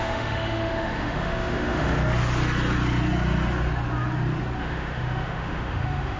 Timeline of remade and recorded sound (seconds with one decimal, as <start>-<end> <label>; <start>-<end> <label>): 0.0-2.0 remade; 2.0-4.6 recorded; 4.6-6.2 remade